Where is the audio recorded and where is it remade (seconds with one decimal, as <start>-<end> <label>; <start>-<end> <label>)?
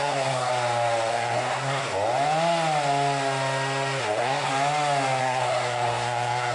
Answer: 0.0-0.5 remade; 0.5-1.1 recorded; 1.1-1.8 remade; 1.8-4.0 recorded; 4.0-4.5 remade; 4.5-5.2 recorded; 5.2-6.5 remade